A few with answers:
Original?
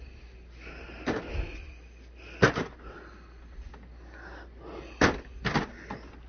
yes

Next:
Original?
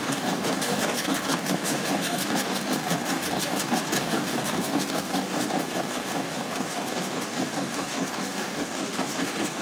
no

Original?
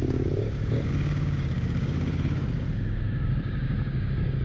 no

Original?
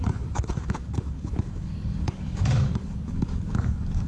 no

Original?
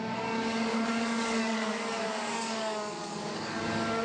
no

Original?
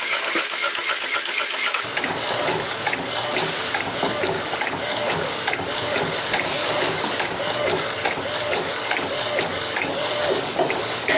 no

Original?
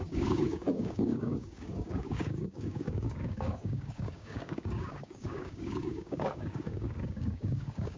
no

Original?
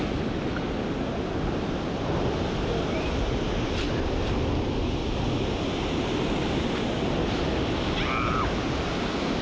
yes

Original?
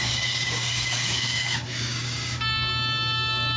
no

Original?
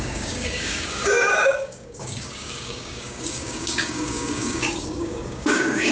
no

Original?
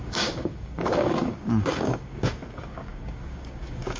no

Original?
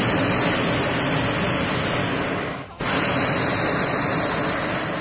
yes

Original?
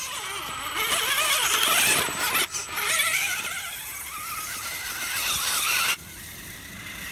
yes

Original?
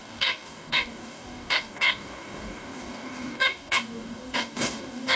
no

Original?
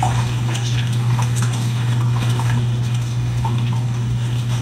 no